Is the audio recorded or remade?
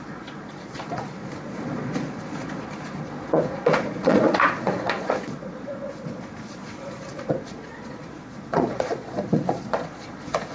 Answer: remade